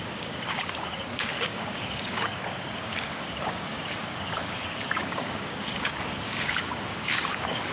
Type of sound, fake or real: fake